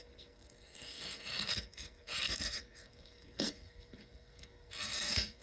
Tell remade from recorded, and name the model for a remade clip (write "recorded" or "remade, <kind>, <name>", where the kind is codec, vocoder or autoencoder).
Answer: remade, codec, SNAC